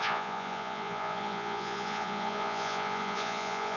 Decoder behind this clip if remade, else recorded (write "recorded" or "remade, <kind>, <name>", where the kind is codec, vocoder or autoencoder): remade, vocoder, Vocos